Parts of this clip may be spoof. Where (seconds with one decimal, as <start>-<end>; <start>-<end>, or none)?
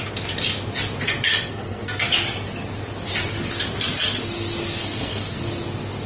1.5-2.1; 4.8-5.4